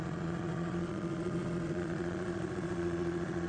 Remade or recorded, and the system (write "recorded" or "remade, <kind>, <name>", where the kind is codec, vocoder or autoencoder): remade, vocoder, Vocos